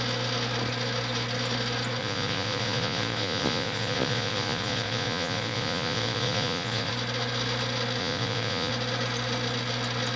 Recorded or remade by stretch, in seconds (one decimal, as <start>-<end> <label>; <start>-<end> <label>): 0.0-2.0 recorded; 2.0-6.9 remade; 6.9-8.0 recorded; 8.0-8.7 remade; 8.7-10.2 recorded